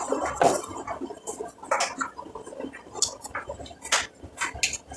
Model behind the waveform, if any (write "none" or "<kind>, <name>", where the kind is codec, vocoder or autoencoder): none